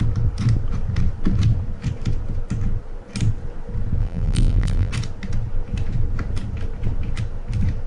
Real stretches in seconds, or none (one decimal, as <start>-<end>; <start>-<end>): 0.0-4.0; 4.9-7.9